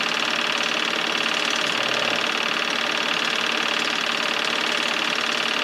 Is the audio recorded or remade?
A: recorded